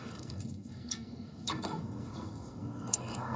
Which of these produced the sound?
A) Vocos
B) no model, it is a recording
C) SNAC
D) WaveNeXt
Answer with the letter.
C